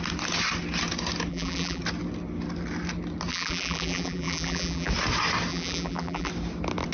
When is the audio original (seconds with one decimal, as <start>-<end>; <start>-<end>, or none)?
0.0-1.3; 1.8-3.3; 4.9-5.5; 6.3-6.9